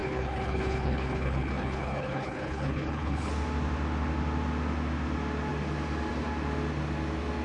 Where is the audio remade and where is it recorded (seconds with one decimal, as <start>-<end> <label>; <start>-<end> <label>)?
0.0-3.3 remade; 3.3-7.4 recorded